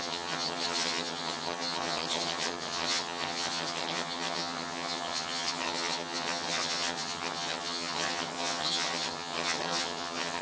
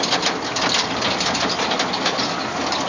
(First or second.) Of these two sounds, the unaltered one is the second